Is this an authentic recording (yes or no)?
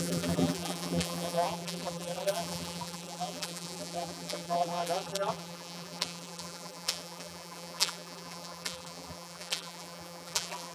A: no